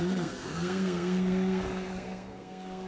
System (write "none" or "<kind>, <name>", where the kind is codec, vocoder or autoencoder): codec, SNAC